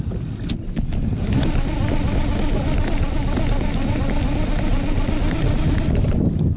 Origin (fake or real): real